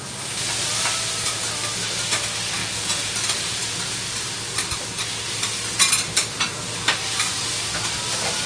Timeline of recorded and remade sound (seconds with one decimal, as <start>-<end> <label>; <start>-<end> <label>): 0.0-2.6 recorded; 2.6-3.1 remade; 3.1-8.5 recorded